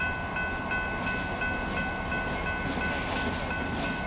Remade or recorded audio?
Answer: recorded